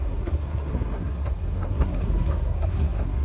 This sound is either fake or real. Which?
fake